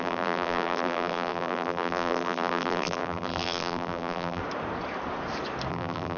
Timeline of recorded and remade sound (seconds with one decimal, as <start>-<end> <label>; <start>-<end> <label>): 0.0-4.4 remade; 4.4-5.7 recorded; 5.7-6.2 remade